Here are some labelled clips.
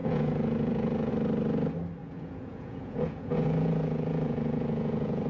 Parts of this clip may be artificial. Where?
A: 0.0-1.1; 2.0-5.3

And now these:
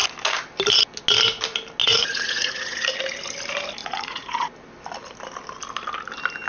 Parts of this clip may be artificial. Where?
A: 1.8-2.9; 3.8-4.5

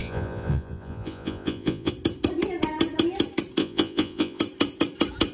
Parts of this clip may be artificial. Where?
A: 0.0-1.9; 3.6-4.4

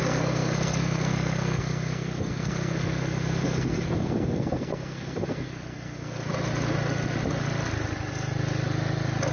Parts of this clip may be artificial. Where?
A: 0.0-6.3